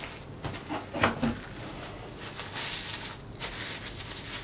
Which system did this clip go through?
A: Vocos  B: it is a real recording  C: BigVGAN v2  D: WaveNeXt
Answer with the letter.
B